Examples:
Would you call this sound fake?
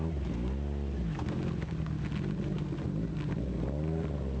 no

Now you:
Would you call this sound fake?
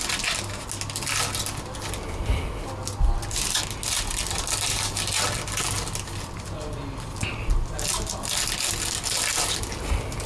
no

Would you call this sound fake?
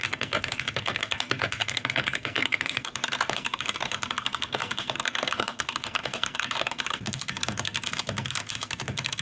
yes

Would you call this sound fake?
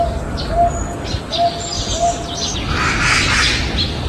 no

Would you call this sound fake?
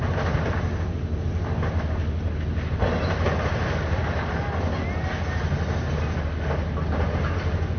no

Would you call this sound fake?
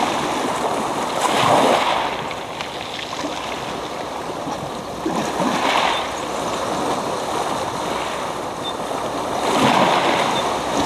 no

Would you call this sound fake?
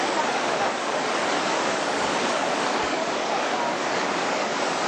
yes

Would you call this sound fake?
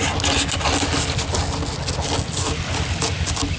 no